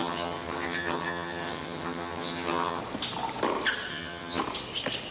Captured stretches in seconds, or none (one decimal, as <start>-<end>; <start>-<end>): 2.8-3.9; 4.4-5.1